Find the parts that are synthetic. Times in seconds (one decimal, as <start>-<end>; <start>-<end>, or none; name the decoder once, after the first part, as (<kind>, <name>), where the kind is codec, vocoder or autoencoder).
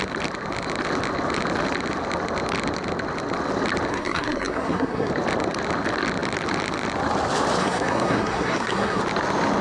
3.9-5.1 (codec, SNAC); 7.6-9.0